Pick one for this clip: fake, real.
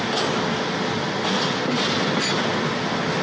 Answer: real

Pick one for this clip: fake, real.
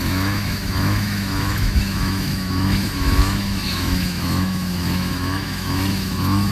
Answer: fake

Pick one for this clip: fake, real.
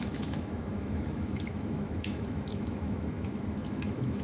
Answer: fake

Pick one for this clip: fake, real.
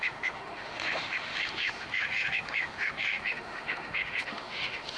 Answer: fake